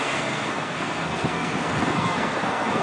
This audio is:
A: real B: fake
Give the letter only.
B